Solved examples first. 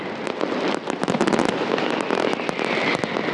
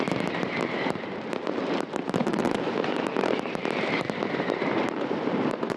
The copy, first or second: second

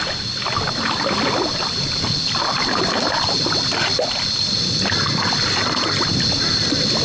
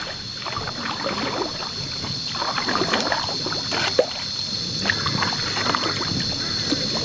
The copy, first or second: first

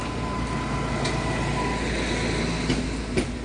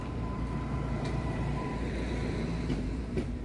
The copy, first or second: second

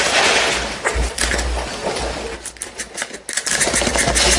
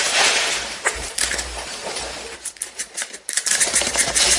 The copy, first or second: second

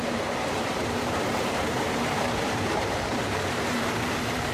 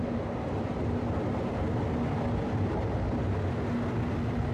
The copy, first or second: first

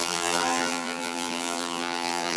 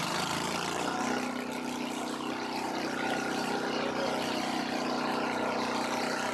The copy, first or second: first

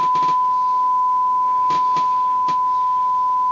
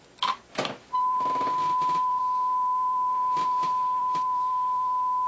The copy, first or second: second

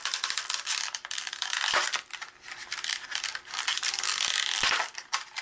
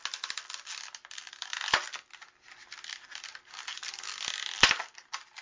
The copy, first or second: first